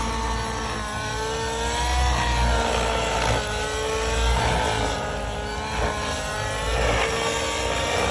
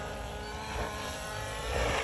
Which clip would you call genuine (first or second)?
first